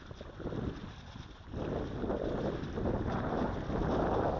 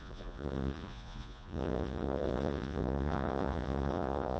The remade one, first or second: second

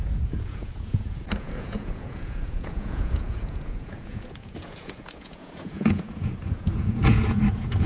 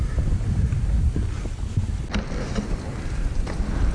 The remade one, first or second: first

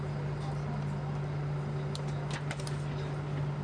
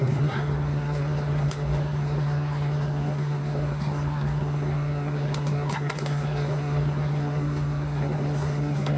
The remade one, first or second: second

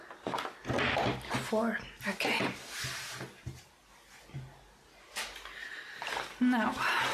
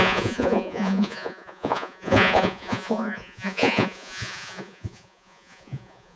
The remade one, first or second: second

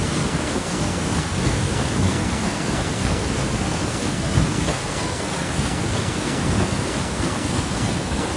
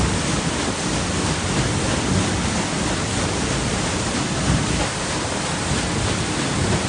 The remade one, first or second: first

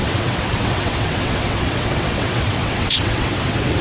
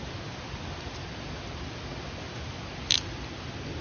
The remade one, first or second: first